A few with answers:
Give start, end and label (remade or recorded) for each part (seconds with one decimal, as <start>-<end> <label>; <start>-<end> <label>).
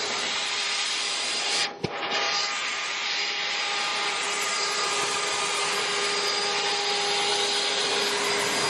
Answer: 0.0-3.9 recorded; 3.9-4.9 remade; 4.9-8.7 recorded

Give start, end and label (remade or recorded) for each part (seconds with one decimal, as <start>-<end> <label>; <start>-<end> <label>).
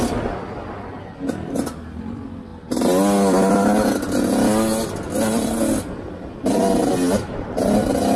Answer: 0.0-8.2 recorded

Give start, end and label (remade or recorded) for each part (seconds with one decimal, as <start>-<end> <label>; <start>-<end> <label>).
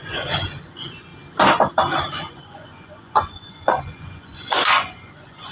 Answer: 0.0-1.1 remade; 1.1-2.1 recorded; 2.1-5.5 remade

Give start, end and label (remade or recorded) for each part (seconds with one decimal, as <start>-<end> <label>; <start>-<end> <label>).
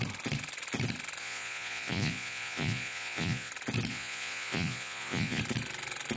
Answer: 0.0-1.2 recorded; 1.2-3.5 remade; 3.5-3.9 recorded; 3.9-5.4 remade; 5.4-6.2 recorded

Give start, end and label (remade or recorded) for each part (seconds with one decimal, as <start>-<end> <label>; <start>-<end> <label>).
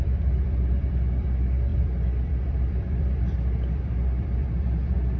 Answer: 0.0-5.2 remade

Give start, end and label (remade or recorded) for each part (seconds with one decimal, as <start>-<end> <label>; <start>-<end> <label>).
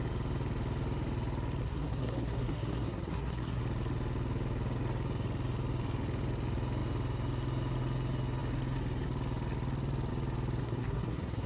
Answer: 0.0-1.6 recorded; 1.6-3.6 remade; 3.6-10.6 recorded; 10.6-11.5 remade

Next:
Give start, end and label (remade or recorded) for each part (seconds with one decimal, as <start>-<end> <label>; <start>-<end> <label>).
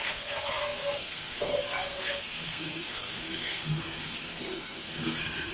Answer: 0.0-5.5 remade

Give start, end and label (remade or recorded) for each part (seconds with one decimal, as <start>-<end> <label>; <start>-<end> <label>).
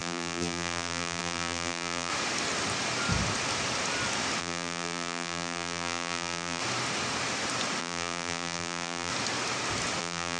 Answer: 0.0-2.1 remade; 2.1-4.4 recorded; 4.4-6.6 remade; 6.6-7.8 recorded; 7.8-9.1 remade; 9.1-10.0 recorded; 10.0-10.4 remade